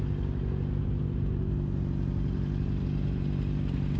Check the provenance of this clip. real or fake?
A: real